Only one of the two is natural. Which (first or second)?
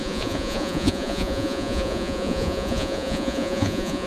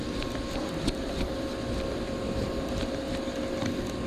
second